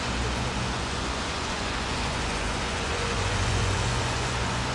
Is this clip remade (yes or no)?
yes